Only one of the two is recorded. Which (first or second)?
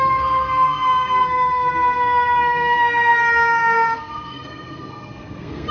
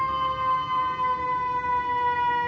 second